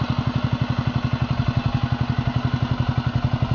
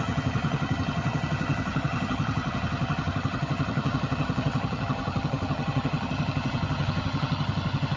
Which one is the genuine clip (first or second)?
first